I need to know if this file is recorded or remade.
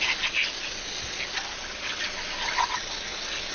recorded